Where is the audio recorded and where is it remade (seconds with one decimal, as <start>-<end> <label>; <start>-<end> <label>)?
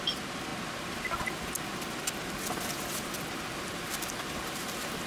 0.0-0.5 remade; 0.5-3.6 recorded; 3.6-5.1 remade